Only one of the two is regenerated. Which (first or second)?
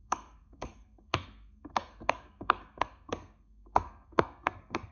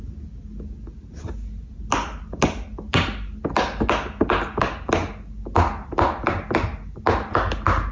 first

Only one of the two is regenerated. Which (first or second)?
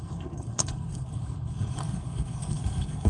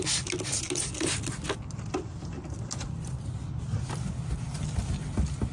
first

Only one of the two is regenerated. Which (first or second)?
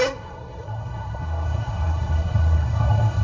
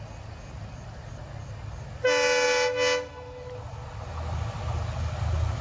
first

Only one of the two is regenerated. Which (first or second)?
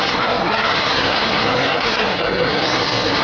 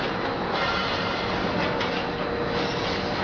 first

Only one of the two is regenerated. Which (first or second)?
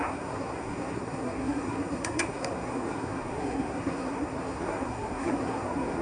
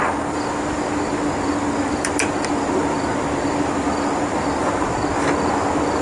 first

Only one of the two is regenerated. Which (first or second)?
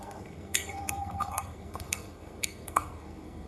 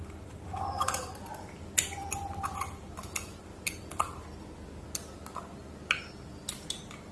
first